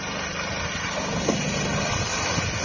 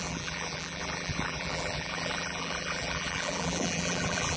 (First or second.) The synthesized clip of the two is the second